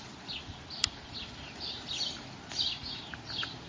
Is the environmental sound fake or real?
real